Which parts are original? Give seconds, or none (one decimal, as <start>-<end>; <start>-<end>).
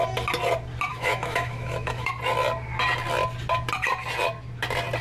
0.0-0.9; 2.1-5.0